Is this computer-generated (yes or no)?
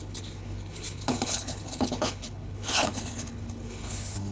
yes